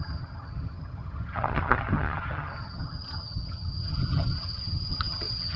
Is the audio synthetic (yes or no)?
yes